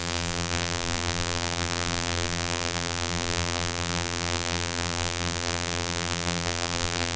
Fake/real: fake